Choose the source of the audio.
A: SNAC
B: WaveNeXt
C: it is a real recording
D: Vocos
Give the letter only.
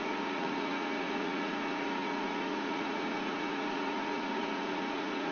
D